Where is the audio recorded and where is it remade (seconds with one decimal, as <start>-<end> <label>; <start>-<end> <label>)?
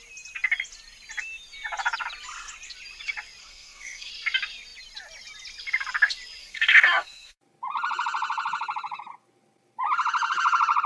0.0-3.4 recorded; 3.4-4.1 remade; 4.1-6.4 recorded; 6.4-7.4 remade; 7.4-10.9 recorded